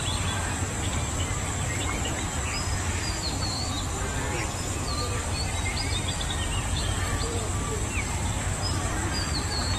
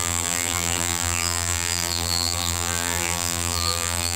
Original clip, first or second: first